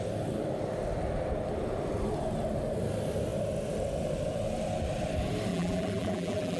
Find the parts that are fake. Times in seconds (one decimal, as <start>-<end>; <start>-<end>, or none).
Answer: 5.5-6.6